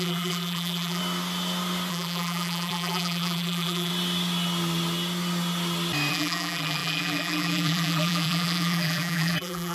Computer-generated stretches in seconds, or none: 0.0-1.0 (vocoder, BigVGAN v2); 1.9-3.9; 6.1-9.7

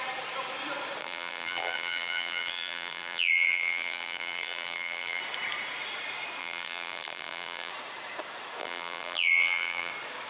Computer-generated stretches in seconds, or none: 1.0-5.2 (vocoder, BigVGAN v2); 6.4-7.7; 8.6-9.9

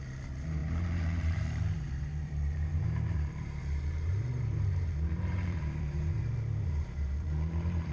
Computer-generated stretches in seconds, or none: 0.0-7.9 (vocoder, BigVGAN v2)

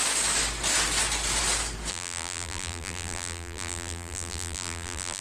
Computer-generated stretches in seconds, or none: 1.9-5.2 (vocoder, BigVGAN v2)

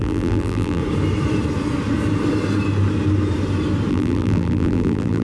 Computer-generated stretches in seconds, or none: 0.0-0.8 (vocoder, BigVGAN v2); 3.9-5.2

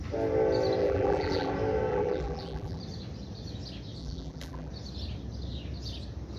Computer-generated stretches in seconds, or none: 0.8-1.5 (vocoder, BigVGAN v2); 1.9-2.8; 4.0-4.7

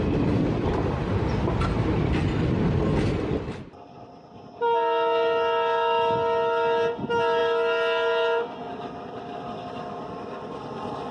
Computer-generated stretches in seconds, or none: none

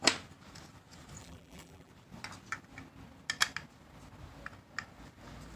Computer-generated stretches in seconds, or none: 1.2-1.9 (vocoder, BigVGAN v2)